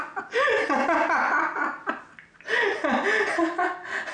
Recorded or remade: recorded